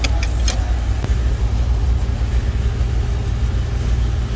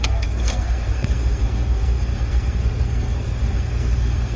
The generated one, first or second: second